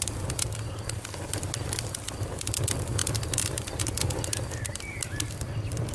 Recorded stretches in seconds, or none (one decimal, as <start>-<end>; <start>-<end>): 0.0-3.0; 4.1-5.9